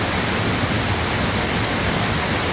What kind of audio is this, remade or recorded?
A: recorded